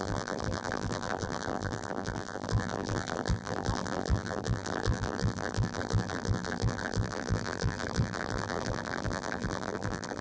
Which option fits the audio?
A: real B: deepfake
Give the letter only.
B